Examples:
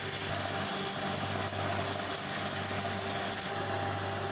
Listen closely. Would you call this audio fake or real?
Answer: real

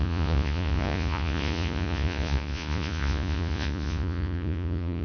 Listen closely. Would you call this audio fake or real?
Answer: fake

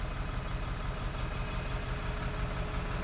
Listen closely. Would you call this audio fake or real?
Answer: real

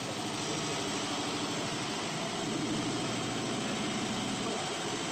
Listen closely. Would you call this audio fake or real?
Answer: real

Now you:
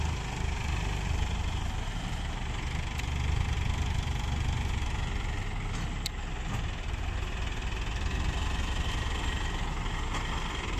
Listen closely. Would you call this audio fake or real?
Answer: real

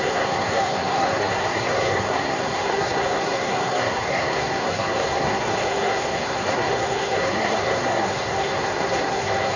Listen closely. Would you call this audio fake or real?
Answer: fake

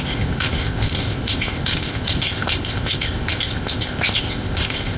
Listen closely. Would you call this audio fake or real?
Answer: fake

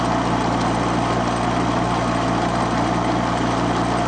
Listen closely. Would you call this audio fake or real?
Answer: real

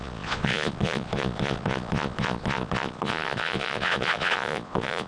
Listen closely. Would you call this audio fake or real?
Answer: fake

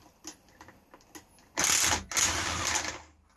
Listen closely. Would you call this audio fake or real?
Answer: real